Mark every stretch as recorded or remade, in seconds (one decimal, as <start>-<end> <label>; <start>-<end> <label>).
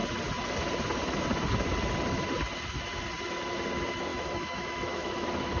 0.0-4.1 recorded; 4.1-5.6 remade